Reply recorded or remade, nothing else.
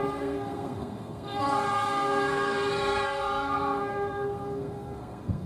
remade